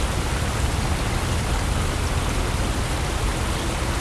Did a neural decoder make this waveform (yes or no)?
no